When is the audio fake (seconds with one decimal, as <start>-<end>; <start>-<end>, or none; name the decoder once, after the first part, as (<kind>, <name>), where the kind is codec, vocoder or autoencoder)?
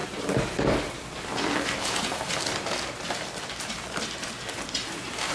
none